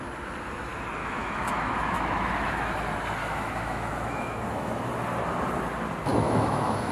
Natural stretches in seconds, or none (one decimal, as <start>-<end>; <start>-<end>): 0.0-1.0; 2.7-3.2; 4.9-6.1